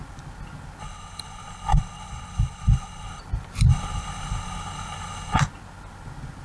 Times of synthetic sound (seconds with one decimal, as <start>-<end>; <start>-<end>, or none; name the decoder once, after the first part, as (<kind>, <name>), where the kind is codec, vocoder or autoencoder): 0.8-3.2 (codec, HILCodec); 3.7-5.4